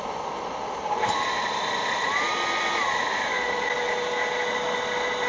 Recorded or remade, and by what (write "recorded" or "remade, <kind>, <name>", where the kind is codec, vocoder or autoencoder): recorded